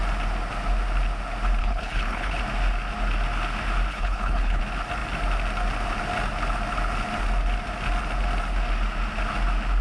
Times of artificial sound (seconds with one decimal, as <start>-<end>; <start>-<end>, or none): 1.6-2.4; 3.9-4.6